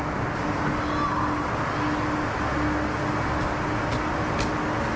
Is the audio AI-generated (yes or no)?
no